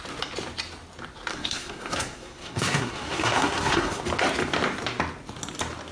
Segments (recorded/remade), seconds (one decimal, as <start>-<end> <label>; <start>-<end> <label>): 0.0-1.3 recorded; 1.3-4.0 remade; 4.0-5.9 recorded